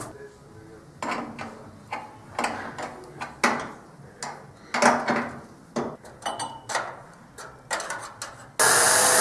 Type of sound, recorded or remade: recorded